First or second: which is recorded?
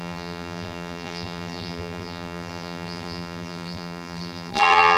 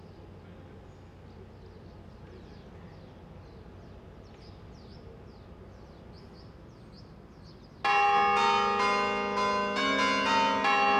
second